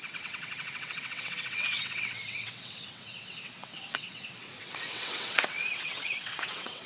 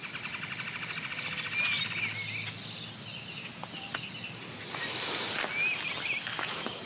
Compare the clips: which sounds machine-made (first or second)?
first